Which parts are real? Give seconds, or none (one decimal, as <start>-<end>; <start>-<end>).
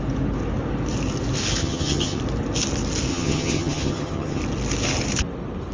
0.0-1.6; 2.2-3.1; 4.4-5.7